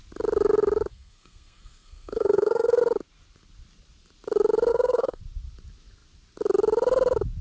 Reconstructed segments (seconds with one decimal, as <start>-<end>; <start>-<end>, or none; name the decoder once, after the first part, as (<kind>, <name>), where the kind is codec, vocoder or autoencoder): 0.9-2.8 (codec, SNAC); 4.7-5.2

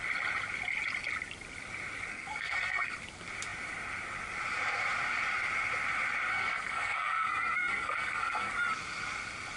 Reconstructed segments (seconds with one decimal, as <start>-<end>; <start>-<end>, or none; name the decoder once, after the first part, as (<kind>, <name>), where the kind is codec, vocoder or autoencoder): 2.1-2.9 (codec, SNAC); 6.3-8.5